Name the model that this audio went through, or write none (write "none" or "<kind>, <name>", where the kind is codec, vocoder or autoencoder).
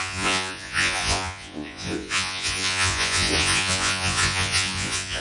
vocoder, Vocos